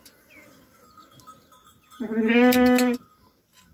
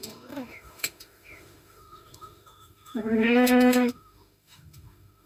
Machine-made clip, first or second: second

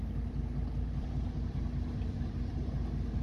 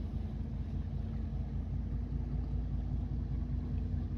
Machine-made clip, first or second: first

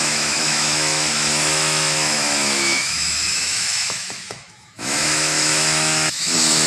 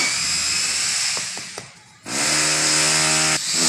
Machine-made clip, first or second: first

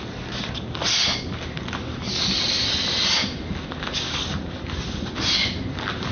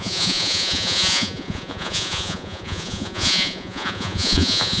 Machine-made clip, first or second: second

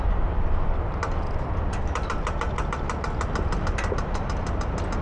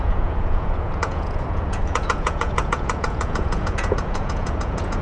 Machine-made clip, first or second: second